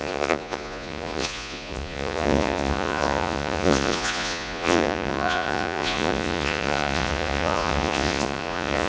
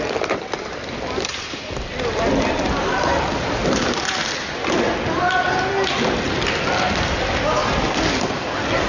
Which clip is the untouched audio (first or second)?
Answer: second